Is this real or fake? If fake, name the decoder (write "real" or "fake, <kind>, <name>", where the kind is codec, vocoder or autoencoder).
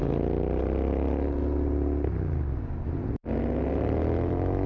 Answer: real